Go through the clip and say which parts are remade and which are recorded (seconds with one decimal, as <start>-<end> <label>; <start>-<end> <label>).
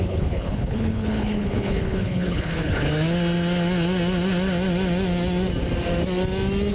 0.0-2.8 remade; 2.8-6.7 recorded